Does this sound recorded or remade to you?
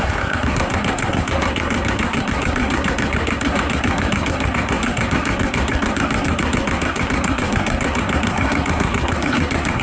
remade